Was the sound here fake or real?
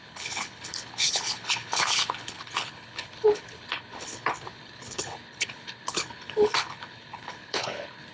fake